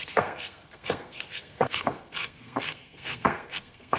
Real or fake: fake